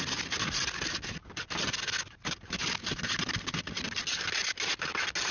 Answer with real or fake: real